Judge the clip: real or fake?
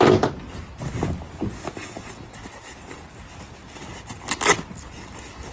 real